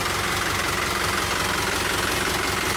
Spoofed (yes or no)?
no